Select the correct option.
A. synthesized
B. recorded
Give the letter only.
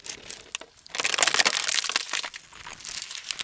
B